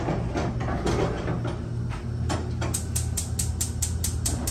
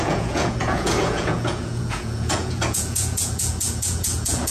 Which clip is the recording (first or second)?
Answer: first